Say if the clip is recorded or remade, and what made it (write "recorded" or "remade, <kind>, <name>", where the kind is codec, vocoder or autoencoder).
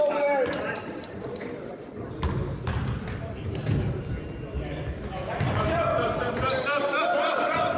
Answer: remade, vocoder, BigVGAN v2